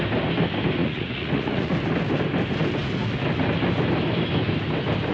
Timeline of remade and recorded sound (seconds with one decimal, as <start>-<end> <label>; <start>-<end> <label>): 0.0-0.8 recorded; 0.8-1.7 remade; 1.7-5.1 recorded